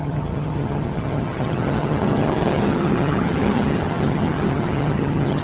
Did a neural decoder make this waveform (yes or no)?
yes